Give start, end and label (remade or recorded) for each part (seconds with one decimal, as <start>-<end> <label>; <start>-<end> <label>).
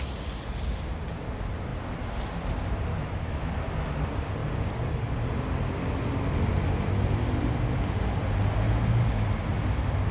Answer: 0.0-2.9 recorded; 2.9-3.5 remade; 3.5-10.1 recorded